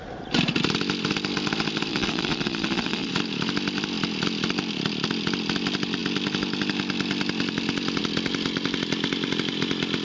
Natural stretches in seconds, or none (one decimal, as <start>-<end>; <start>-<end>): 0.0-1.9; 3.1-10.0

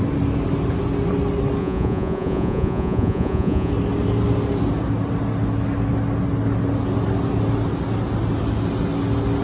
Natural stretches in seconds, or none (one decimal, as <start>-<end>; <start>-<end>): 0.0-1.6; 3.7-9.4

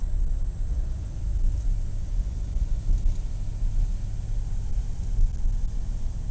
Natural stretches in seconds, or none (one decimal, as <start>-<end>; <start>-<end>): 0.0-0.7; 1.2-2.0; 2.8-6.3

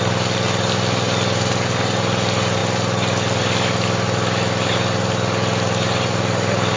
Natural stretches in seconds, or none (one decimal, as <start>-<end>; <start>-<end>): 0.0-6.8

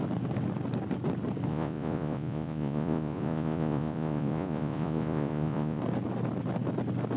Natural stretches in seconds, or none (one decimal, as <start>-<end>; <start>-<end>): 0.0-1.5; 5.8-7.2

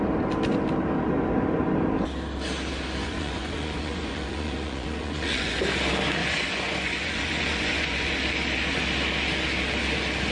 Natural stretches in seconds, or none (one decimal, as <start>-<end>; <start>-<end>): 0.0-3.0; 5.6-6.2; 8.1-10.3